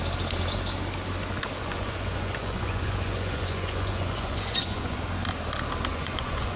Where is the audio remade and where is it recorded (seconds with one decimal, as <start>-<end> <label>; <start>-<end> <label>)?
0.0-1.6 recorded; 1.6-5.0 remade; 5.0-5.9 recorded; 5.9-6.6 remade